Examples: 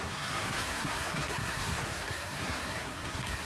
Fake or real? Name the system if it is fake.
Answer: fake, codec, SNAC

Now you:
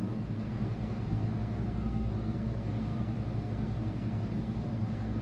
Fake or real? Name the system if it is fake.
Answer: fake, codec, SNAC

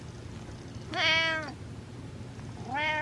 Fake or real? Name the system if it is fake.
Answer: real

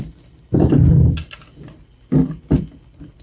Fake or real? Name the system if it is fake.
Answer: real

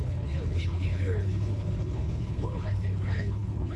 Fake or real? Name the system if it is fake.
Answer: fake, codec, HILCodec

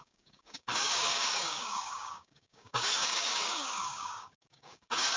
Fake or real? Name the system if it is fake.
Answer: fake, codec, DAC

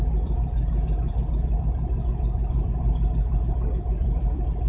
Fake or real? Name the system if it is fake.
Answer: fake, vocoder, BigVGAN v2